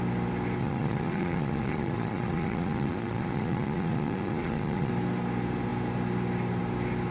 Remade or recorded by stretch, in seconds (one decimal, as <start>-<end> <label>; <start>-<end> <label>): 0.0-0.6 recorded; 0.6-4.9 remade; 4.9-7.1 recorded